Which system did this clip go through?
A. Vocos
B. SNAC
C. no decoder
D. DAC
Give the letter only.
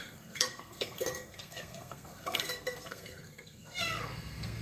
B